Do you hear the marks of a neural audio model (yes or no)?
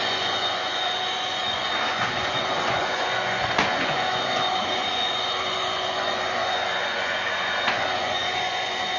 yes